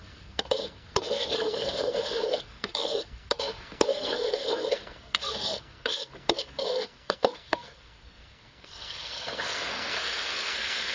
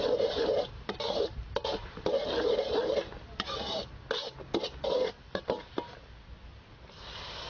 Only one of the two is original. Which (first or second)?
second